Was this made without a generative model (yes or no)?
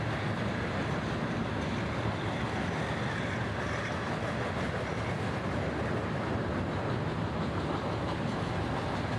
yes